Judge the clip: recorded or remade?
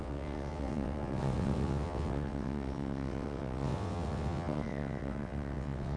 remade